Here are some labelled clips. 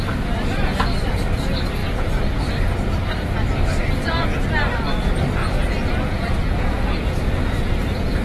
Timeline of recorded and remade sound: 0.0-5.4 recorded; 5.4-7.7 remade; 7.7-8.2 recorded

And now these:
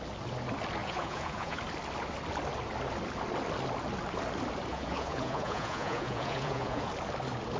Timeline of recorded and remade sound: 0.0-0.8 recorded; 0.8-1.6 remade; 1.6-4.7 recorded; 4.7-6.9 remade; 6.9-7.6 recorded

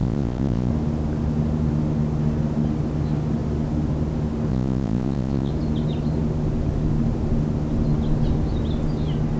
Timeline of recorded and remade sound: 0.0-0.7 remade; 0.7-4.5 recorded; 4.5-5.5 remade; 5.5-9.4 recorded

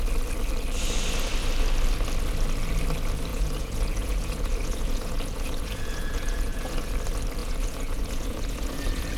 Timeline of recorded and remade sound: 0.0-3.3 recorded; 3.3-6.9 remade; 6.9-7.4 recorded; 7.4-9.2 remade